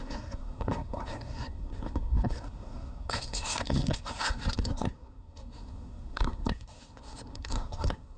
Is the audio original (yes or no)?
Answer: no